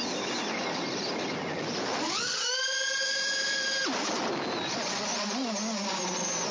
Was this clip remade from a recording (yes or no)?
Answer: no